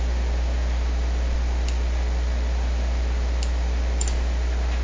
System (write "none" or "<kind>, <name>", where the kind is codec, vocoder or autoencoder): none